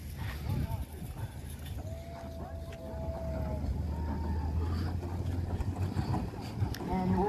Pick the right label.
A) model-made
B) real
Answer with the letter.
B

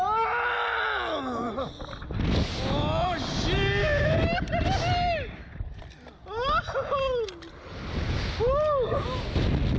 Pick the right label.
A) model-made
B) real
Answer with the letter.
B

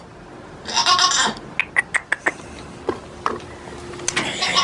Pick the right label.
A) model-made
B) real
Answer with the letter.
B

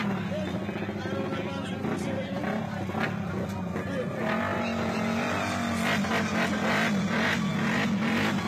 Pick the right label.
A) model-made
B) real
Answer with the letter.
B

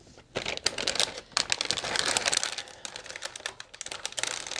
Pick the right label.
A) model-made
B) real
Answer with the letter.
B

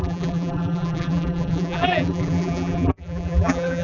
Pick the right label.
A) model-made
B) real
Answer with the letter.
A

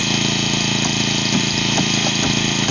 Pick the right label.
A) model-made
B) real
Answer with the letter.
B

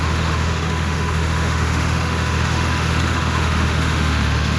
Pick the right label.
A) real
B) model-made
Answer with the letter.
B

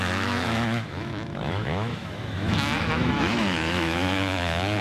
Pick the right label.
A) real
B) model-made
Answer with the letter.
B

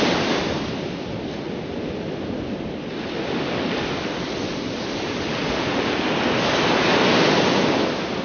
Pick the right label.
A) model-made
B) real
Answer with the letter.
B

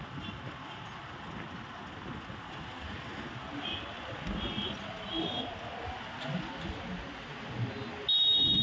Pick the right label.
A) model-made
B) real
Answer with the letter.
B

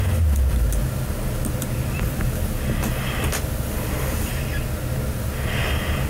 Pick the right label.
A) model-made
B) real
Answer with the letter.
B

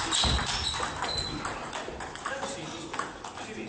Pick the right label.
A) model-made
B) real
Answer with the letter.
B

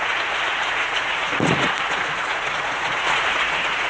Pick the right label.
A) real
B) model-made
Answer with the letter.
B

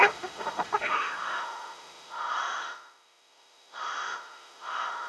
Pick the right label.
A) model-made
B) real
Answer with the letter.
A